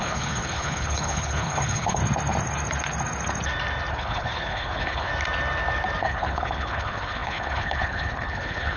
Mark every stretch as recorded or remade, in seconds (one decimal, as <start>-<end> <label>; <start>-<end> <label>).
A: 0.0-2.0 remade; 2.0-3.9 recorded; 3.9-5.1 remade; 5.1-6.0 recorded; 6.0-8.8 remade